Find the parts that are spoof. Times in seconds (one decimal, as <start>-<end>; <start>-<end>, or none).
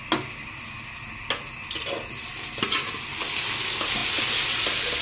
none